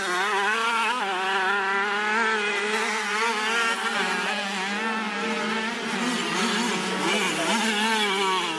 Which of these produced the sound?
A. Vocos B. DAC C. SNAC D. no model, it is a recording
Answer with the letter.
D